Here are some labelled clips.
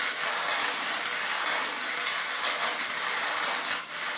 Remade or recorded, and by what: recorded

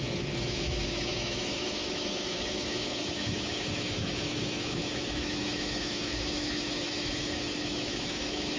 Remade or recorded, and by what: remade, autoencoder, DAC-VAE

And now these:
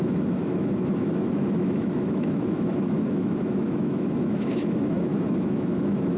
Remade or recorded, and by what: remade, autoencoder, DAC-VAE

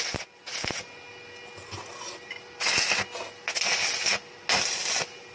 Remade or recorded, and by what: recorded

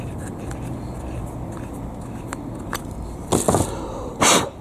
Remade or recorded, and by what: recorded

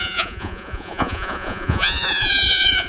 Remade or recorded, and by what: remade, vocoder, Vocos